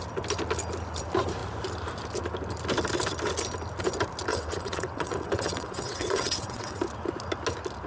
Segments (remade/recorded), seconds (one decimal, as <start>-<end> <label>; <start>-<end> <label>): 0.0-4.3 recorded; 4.3-6.8 remade; 6.8-7.9 recorded